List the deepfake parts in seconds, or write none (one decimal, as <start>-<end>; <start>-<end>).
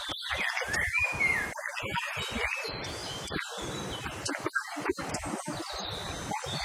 none